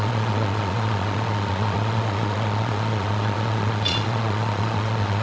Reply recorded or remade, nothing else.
remade